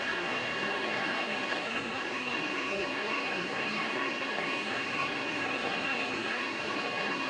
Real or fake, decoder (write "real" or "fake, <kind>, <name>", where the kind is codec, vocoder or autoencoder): fake, codec, SNAC